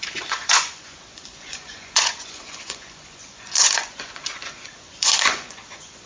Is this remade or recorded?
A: remade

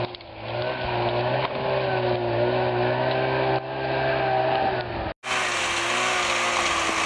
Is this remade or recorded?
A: recorded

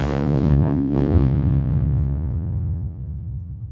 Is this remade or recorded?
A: remade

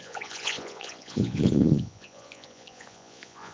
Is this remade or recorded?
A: remade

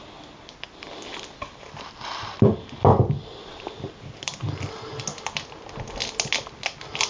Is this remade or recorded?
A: recorded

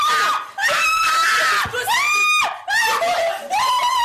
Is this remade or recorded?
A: recorded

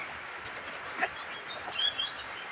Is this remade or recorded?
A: recorded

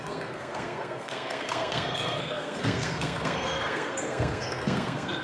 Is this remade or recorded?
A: remade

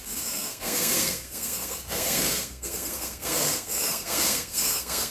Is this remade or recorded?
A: remade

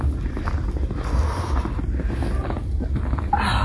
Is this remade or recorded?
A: recorded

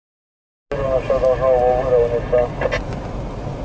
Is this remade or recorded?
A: recorded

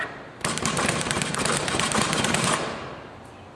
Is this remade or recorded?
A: remade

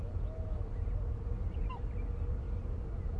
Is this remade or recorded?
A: recorded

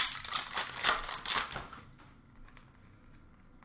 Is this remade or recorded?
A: recorded